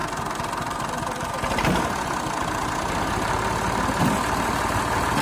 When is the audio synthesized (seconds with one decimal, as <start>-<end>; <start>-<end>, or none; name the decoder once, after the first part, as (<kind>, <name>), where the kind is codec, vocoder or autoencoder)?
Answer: 3.1-5.2 (vocoder, BigVGAN v2)